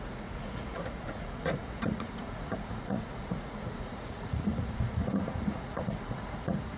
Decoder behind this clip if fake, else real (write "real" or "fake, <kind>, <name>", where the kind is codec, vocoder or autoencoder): fake, vocoder, Vocos